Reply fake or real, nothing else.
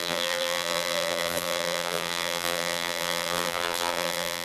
fake